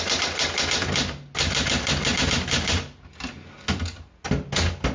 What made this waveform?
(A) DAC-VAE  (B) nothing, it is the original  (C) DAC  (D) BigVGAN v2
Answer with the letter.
B